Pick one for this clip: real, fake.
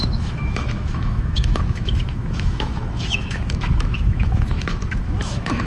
fake